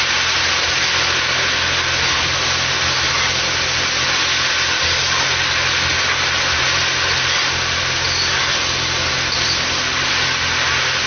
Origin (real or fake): real